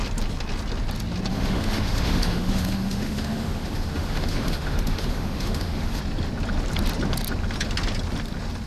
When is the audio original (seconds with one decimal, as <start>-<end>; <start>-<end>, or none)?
0.0-1.3; 6.0-8.7

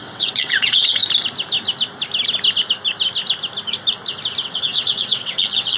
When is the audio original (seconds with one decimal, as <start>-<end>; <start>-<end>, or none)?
1.0-4.5